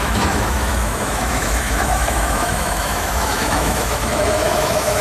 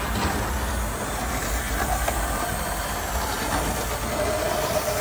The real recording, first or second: second